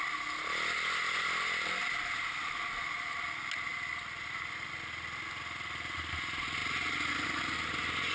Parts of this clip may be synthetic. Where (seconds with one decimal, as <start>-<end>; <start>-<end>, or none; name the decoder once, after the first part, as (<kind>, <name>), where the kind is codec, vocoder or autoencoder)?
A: none